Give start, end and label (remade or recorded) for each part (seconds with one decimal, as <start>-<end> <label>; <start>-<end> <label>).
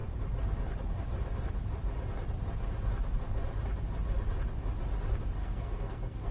0.0-5.4 recorded; 5.4-6.3 remade